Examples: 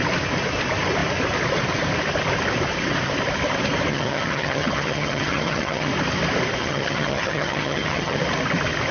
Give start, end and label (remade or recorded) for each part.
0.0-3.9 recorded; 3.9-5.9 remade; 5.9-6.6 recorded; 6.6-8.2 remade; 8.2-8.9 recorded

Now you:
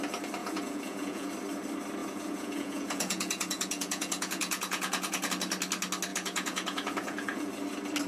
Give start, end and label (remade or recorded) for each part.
0.0-0.4 recorded; 0.4-1.3 remade; 1.3-2.0 recorded; 2.0-5.3 remade; 5.3-6.1 recorded; 6.1-7.5 remade; 7.5-8.1 recorded